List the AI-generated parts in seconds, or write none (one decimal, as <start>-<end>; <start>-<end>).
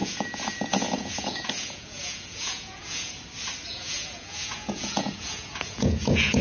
0.0-3.1; 3.7-6.4